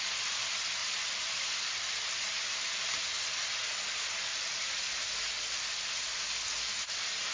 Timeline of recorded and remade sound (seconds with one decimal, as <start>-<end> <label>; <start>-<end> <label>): 0.0-0.8 recorded; 0.8-2.1 remade; 2.1-7.3 recorded